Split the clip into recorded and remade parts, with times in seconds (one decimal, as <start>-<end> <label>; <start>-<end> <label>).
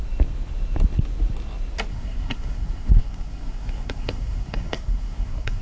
0.0-1.9 recorded; 1.9-5.6 remade